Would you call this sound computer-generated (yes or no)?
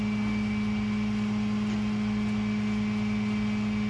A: no